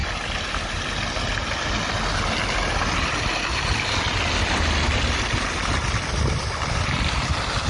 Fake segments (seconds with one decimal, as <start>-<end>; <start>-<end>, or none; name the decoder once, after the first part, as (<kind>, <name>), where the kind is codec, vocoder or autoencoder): none